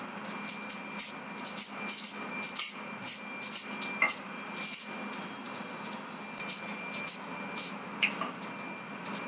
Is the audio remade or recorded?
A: recorded